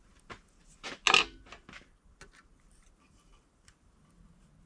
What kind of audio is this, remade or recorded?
recorded